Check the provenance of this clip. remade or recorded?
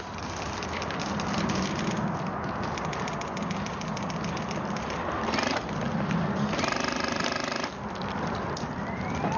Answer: recorded